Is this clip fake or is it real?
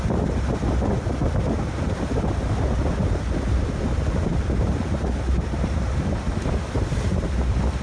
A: real